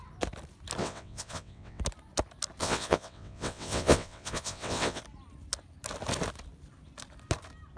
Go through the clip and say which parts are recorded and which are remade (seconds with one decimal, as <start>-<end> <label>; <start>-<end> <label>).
0.0-0.8 recorded; 0.8-1.8 remade; 1.8-2.6 recorded; 2.6-5.0 remade; 5.0-7.8 recorded